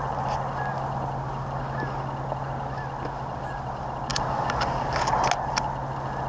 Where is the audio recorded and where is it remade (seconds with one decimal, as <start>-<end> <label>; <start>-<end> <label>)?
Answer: 0.0-6.3 recorded

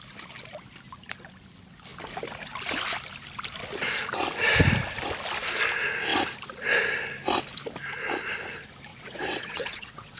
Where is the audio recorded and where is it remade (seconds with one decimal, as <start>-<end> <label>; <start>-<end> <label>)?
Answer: 0.0-8.9 recorded; 8.9-10.2 remade